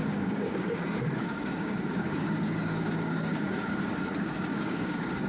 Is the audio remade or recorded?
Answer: remade